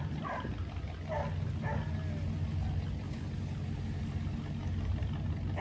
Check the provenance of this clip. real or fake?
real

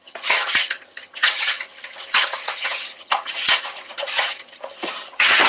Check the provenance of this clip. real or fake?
fake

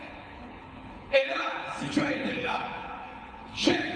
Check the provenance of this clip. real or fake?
fake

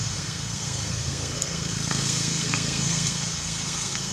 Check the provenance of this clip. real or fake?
fake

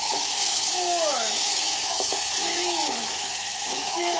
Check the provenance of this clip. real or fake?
fake